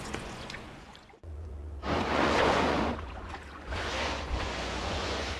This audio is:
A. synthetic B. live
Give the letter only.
A